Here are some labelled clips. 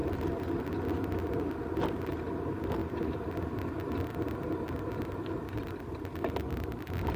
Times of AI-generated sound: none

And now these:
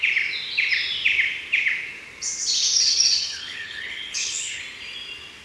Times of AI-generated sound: 3.2-4.6

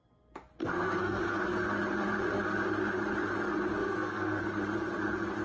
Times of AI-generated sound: 0.6-1.2; 3.8-4.4

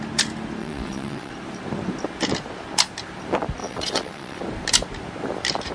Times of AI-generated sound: 0.6-1.3; 3.6-4.4

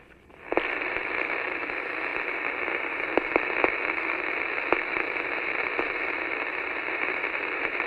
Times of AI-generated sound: 0.0-7.9

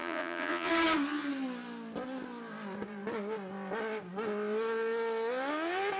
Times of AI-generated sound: 0.0-0.7

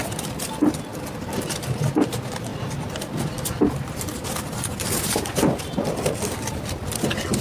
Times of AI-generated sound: none

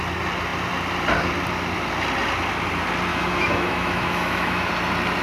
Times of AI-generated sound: 3.1-4.7